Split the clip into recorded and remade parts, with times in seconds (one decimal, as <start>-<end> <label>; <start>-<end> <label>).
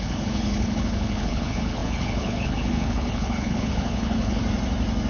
0.0-4.4 remade; 4.4-5.1 recorded